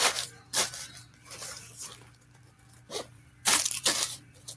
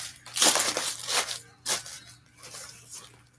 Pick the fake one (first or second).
first